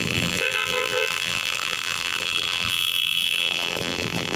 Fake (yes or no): yes